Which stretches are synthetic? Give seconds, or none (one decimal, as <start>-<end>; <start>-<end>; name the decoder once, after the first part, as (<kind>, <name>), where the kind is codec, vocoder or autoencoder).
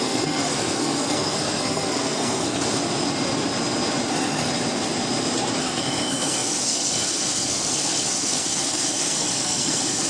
0.0-2.8 (codec, SNAC); 4.1-4.5; 5.6-10.1